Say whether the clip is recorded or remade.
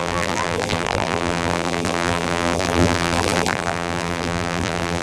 remade